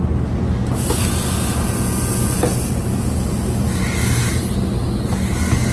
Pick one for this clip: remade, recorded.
recorded